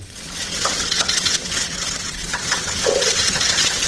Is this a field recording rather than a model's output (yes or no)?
no